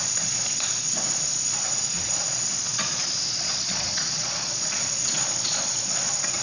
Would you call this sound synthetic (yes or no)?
yes